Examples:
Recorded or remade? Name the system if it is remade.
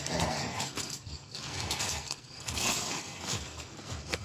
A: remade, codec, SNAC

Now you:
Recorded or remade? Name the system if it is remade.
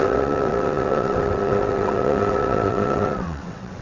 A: remade, vocoder, WaveNeXt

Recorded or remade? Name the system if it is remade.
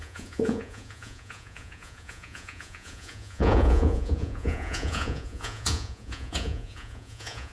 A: remade, vocoder, Vocos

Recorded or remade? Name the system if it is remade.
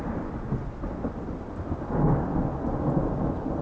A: recorded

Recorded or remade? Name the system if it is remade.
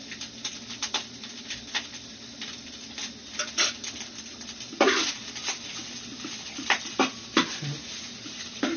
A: recorded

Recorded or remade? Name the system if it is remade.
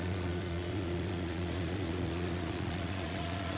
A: remade, vocoder, Vocos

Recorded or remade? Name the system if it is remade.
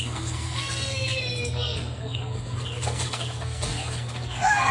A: remade, codec, SNAC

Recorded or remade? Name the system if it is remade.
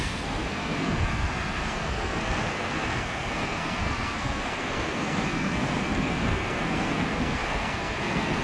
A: remade, codec, SNAC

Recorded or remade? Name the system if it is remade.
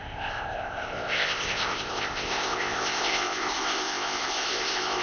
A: remade, codec, ZipCodec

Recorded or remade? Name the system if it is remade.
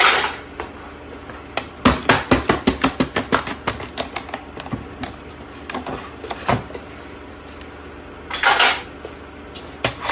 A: recorded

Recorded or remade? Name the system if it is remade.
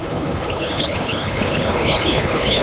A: remade, codec, HILCodec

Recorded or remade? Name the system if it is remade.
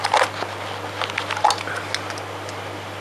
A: recorded